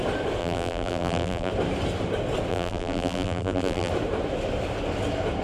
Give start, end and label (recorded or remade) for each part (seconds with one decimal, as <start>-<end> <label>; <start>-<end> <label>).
0.0-0.4 recorded; 0.4-1.5 remade; 1.5-2.5 recorded; 2.5-3.9 remade; 3.9-5.4 recorded

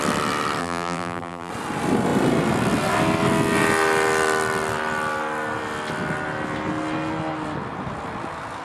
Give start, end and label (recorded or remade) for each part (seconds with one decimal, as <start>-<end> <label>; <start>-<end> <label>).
0.0-0.6 recorded; 0.6-1.5 remade; 1.5-8.6 recorded

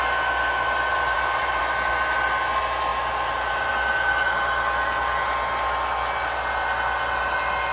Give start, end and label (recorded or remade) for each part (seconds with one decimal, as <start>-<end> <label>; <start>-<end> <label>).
0.0-0.9 recorded; 0.9-1.6 remade; 1.6-2.9 recorded; 2.9-3.7 remade; 3.7-7.7 recorded

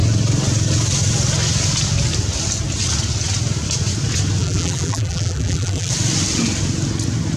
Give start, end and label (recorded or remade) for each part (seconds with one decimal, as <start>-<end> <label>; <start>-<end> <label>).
0.0-4.4 recorded; 4.4-5.9 remade; 5.9-7.4 recorded